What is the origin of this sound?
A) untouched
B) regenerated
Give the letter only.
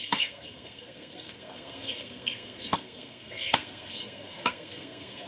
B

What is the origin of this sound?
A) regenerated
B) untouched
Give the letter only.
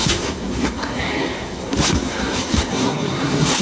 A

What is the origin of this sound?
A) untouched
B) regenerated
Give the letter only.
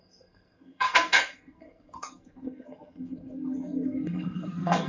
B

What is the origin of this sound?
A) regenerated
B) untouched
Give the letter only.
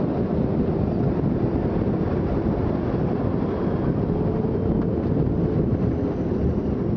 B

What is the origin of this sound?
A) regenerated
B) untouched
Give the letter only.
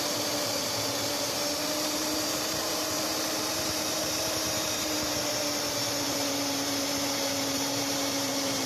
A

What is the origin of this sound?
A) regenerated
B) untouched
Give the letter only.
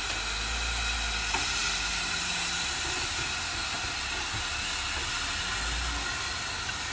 B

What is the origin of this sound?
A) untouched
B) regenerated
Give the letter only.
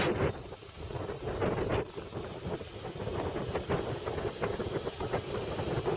A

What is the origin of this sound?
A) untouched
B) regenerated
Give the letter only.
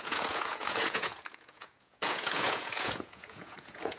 B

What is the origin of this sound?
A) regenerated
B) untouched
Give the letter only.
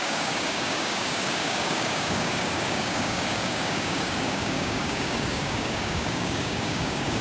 A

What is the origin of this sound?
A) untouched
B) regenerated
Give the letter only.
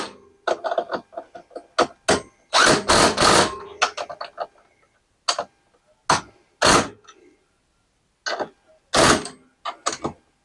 A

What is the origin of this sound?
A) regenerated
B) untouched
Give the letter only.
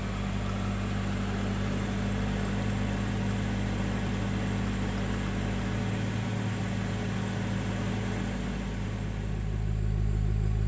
B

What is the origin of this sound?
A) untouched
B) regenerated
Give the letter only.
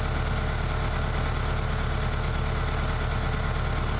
A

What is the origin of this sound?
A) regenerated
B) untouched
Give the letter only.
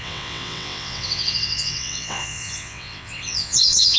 A